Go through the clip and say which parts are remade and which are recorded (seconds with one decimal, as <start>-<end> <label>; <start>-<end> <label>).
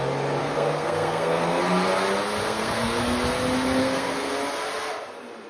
0.0-0.4 recorded; 0.4-1.6 remade; 1.6-2.4 recorded; 2.4-3.0 remade; 3.0-3.8 recorded; 3.8-4.3 remade; 4.3-5.5 recorded